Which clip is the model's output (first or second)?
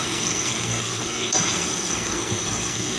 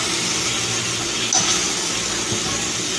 first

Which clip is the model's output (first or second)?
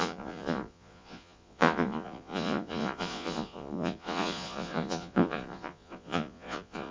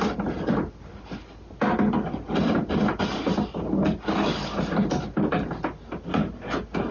first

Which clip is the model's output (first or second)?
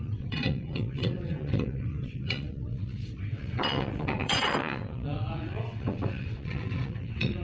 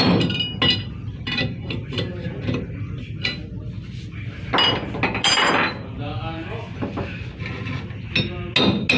first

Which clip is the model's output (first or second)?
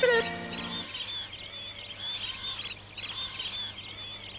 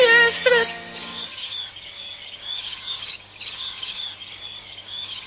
second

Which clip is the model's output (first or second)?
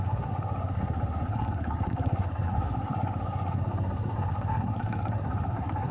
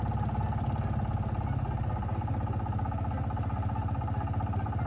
first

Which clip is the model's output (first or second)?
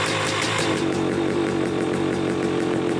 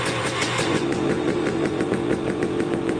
second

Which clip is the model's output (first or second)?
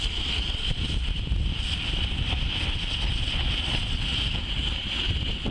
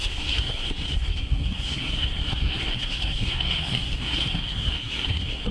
second